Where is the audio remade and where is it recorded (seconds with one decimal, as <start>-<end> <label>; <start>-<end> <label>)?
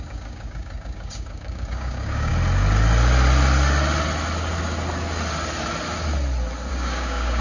0.0-2.3 remade; 2.3-6.7 recorded; 6.7-7.4 remade